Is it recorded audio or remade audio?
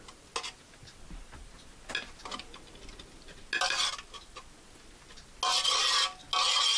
recorded